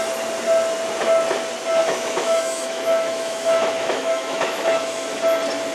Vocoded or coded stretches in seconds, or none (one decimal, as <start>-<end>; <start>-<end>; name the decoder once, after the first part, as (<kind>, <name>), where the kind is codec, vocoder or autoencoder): 1.8-5.2 (autoencoder, DAC-VAE)